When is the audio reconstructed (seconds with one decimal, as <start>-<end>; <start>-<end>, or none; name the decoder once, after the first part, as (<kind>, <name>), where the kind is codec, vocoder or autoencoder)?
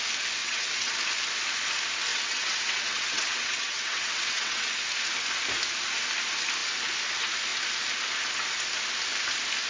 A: 0.4-0.9 (vocoder, WaveNeXt); 2.1-4.7